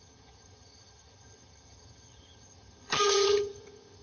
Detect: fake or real fake